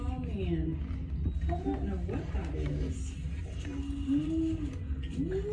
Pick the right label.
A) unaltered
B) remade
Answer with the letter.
A